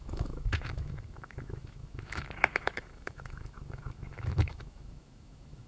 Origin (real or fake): fake